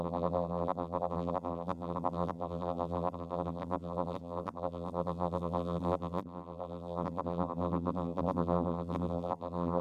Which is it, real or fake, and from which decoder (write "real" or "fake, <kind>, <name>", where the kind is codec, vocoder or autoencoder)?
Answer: fake, vocoder, BigVGAN v2